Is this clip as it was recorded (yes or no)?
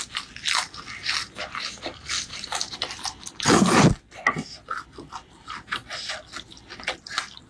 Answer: yes